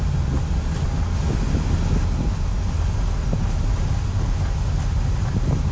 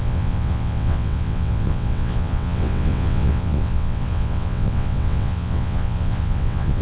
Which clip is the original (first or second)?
first